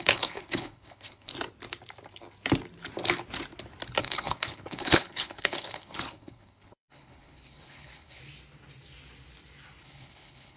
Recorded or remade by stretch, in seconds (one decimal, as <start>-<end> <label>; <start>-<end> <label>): 0.0-1.3 remade; 1.3-4.0 recorded; 4.0-8.2 remade; 8.2-9.8 recorded; 9.8-10.6 remade